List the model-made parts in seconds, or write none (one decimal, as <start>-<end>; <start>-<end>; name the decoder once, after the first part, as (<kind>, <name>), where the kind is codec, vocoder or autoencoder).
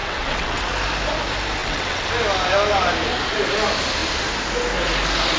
0.0-0.7 (vocoder, WaveNeXt); 1.6-2.1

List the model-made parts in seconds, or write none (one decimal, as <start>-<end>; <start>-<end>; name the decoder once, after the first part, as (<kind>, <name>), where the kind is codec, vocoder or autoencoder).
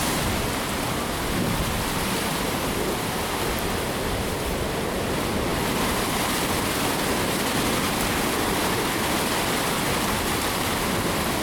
none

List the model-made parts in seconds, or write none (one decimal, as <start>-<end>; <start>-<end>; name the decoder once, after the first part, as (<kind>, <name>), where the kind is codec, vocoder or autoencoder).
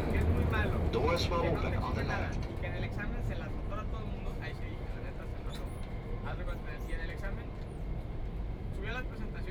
0.6-2.2 (vocoder, BigVGAN v2); 5.3-8.8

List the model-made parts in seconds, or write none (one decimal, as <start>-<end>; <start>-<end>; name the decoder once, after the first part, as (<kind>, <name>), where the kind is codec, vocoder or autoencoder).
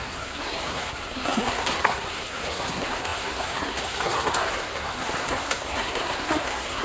0.0-6.8 (codec, SNAC)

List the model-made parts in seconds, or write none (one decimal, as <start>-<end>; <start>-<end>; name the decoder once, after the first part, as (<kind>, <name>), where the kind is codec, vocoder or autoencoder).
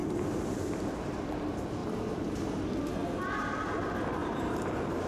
1.8-2.4 (vocoder, BigVGAN v2); 4.2-5.1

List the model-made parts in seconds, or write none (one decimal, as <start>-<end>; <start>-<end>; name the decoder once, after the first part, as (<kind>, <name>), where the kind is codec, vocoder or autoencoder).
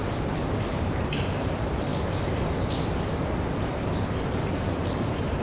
0.0-1.9 (vocoder, BigVGAN v2); 3.7-5.4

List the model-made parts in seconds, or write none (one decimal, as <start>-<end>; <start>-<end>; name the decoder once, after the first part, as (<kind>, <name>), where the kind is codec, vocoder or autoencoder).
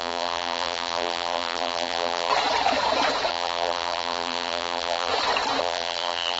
0.0-2.3 (vocoder, BigVGAN v2); 3.3-5.1; 5.6-6.4